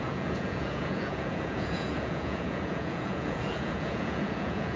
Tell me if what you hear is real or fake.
fake